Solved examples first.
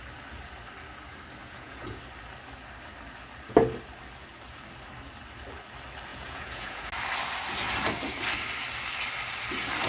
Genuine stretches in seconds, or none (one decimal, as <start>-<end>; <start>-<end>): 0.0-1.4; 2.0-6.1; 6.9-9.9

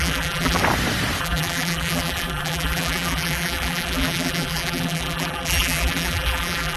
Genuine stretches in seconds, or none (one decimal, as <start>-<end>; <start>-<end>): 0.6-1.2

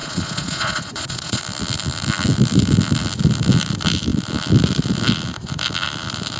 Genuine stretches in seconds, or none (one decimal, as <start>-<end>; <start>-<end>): 1.4-6.4

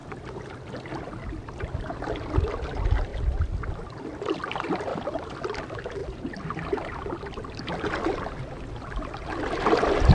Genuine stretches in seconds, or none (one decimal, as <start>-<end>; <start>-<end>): 0.0-1.8; 3.1-4.1

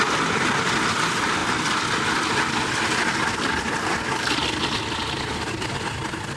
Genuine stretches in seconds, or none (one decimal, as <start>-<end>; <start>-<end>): 0.0-6.4